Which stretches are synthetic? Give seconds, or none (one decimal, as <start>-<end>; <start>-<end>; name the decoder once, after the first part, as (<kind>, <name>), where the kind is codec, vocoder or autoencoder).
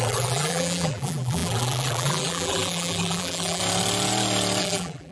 0.0-3.6 (vocoder, BigVGAN v2); 4.6-5.1